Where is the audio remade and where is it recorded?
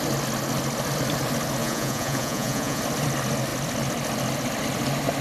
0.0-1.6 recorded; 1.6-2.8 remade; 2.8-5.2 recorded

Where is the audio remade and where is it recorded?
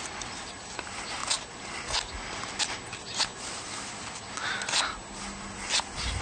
0.0-6.2 recorded